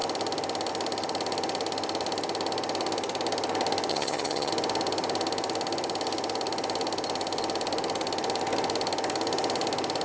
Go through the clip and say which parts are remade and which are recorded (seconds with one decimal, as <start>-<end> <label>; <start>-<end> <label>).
0.0-3.9 recorded; 3.9-4.5 remade; 4.5-10.0 recorded